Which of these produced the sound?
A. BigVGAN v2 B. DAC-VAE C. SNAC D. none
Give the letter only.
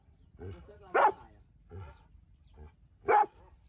D